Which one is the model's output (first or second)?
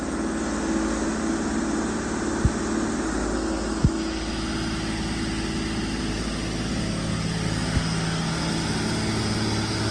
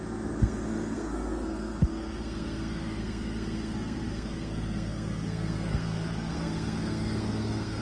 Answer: second